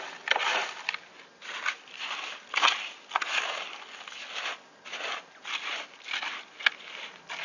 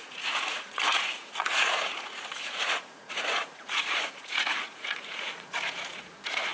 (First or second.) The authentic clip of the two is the first